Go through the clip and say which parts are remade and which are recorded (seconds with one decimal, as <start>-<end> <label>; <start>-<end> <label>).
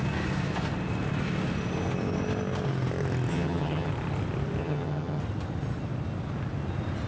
0.0-3.3 recorded; 3.3-3.9 remade; 3.9-4.6 recorded; 4.6-5.2 remade; 5.2-7.1 recorded